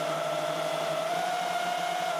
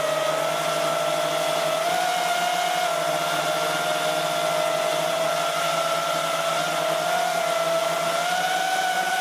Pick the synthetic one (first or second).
first